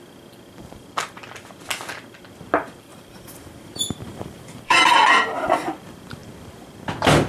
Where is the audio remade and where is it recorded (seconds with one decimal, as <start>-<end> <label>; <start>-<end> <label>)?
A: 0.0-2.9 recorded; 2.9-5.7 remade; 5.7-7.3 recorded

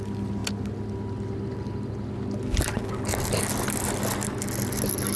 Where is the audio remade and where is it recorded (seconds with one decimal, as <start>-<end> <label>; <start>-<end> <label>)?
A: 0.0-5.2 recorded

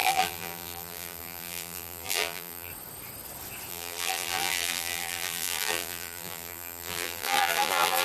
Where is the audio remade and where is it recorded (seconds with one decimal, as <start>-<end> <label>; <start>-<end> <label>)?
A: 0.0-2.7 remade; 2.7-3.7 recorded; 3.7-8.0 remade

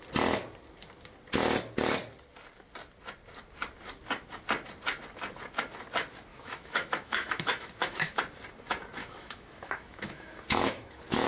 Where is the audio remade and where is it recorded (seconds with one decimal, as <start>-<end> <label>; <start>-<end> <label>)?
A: 0.0-6.3 recorded; 6.3-8.2 remade; 8.2-9.0 recorded; 9.0-11.3 remade

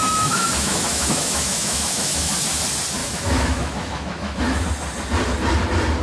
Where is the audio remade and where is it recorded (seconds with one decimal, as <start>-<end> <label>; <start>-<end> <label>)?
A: 0.0-2.3 remade; 2.3-3.0 recorded; 3.0-4.4 remade; 4.4-6.0 recorded

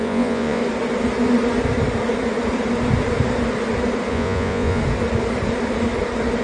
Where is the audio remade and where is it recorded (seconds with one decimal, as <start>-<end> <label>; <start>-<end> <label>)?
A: 0.0-0.6 remade; 0.6-4.1 recorded; 4.1-4.8 remade; 4.8-6.4 recorded

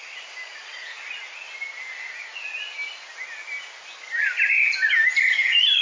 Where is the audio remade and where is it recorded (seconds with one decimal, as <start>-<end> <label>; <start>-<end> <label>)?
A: 0.0-5.8 recorded

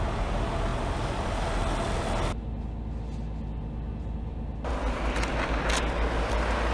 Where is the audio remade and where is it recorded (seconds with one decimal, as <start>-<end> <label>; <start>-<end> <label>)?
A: 0.0-6.7 recorded